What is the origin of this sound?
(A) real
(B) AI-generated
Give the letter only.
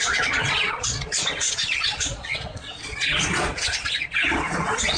B